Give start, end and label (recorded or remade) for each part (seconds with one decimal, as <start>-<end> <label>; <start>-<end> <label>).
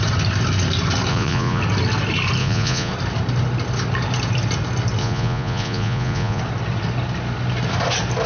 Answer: 0.0-1.1 recorded; 1.1-1.6 remade; 1.6-2.4 recorded; 2.4-2.9 remade; 2.9-5.0 recorded; 5.0-6.4 remade; 6.4-8.3 recorded